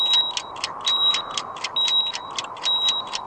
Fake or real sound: real